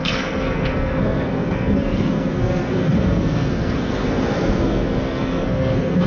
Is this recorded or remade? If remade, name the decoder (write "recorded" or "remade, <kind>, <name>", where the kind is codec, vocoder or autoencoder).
remade, codec, SNAC